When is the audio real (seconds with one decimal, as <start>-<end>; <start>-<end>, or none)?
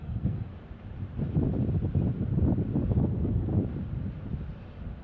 0.5-3.0; 3.5-5.0